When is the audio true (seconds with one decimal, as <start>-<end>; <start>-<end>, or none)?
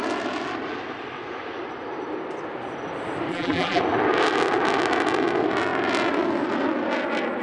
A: 0.0-3.3; 3.8-7.4